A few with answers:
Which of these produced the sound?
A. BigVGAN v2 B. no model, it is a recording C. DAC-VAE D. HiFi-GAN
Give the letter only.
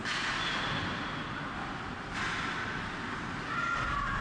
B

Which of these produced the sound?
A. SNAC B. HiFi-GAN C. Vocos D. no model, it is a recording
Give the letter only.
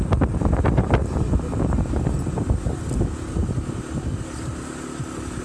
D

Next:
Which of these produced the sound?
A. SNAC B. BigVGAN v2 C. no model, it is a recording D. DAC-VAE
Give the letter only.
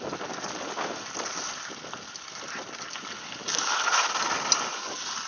C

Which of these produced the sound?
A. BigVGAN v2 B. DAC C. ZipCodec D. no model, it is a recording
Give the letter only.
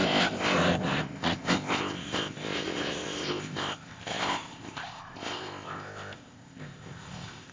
C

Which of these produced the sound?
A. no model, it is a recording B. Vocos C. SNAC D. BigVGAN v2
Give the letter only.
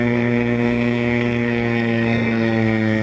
C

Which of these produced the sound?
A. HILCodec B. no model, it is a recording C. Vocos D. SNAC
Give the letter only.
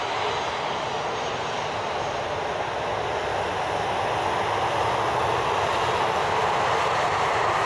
B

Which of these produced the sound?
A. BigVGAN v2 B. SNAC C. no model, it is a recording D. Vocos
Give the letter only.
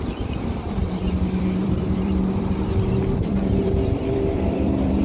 A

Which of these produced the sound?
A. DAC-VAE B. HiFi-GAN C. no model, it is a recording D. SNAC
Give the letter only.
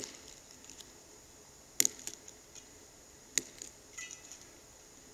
C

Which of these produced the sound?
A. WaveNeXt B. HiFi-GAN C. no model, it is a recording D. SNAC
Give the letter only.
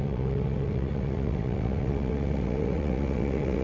A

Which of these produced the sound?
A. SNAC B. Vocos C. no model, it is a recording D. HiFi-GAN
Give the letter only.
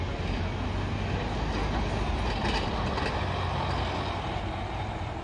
C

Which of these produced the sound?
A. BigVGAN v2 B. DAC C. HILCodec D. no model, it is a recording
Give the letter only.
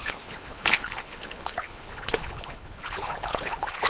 C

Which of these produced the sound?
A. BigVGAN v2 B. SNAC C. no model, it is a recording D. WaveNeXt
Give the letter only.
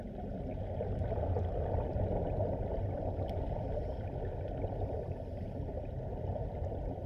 C